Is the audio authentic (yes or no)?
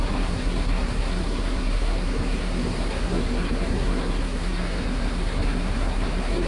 no